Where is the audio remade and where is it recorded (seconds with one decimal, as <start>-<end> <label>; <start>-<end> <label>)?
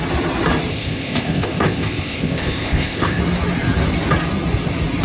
0.0-0.7 recorded; 0.7-3.2 remade; 3.2-5.0 recorded